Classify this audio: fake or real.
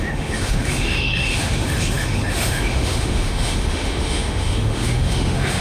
fake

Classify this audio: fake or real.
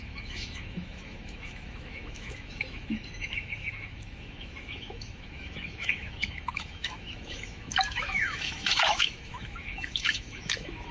fake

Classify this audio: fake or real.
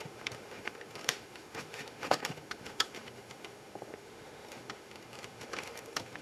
fake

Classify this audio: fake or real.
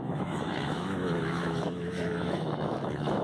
fake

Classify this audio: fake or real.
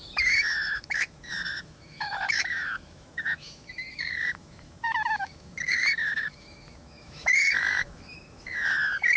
fake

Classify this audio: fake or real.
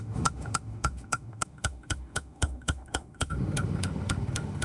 fake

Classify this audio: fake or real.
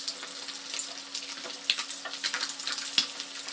real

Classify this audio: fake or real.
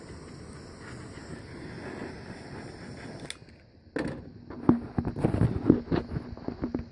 real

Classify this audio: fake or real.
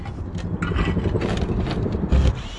real